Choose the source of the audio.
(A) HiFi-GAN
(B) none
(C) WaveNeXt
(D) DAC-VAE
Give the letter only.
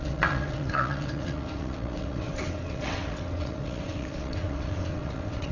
C